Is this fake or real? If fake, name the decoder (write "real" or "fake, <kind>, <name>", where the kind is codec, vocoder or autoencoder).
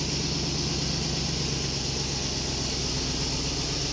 real